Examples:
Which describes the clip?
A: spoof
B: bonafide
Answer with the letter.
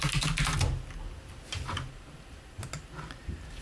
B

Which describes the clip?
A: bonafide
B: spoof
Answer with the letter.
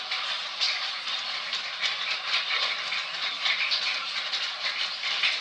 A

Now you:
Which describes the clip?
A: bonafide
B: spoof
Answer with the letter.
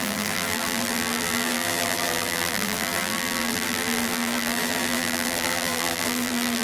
B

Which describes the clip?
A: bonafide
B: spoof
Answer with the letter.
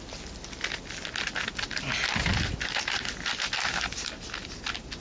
A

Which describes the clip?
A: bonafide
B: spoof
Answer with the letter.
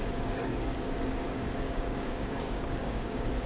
B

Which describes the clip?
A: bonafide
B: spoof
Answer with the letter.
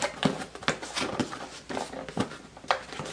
A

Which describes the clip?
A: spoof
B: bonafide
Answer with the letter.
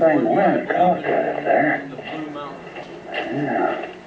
B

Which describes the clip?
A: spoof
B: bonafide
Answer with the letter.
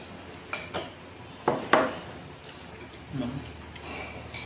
B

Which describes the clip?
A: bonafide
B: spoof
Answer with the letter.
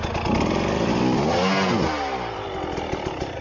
A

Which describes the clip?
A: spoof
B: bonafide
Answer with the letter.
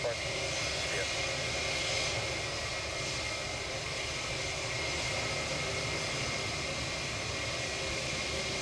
B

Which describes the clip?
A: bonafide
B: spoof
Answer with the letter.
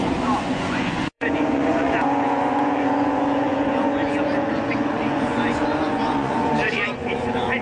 B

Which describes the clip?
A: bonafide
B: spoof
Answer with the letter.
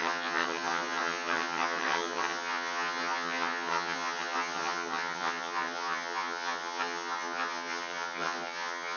B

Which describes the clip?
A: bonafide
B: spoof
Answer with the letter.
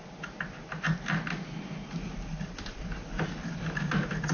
A